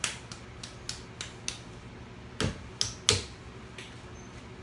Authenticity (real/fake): real